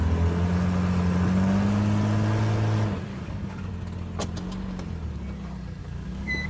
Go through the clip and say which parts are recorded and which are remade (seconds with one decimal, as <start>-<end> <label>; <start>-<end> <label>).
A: 0.0-3.1 recorded; 3.1-3.7 remade; 3.7-5.8 recorded; 5.8-6.5 remade